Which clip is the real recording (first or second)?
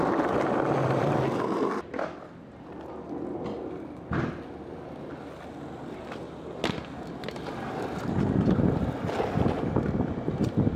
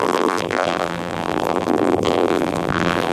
first